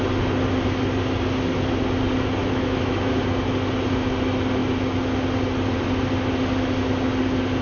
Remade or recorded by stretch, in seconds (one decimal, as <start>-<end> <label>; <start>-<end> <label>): 0.0-2.4 recorded; 2.4-3.2 remade; 3.2-7.6 recorded